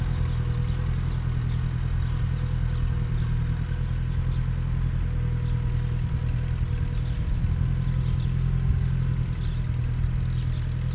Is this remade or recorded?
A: recorded